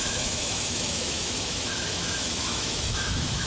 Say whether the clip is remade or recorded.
remade